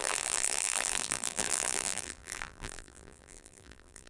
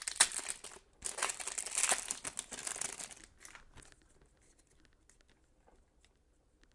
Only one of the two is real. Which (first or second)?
second